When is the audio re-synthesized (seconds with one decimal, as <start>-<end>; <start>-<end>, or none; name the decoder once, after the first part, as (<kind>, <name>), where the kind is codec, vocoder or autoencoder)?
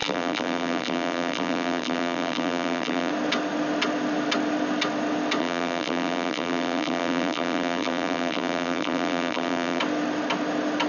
0.0-3.1 (vocoder, BigVGAN v2); 5.4-9.8